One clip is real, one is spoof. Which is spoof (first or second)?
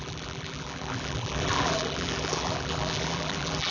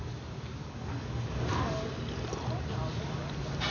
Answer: first